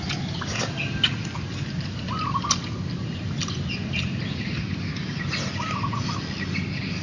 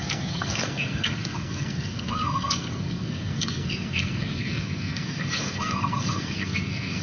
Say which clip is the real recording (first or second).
first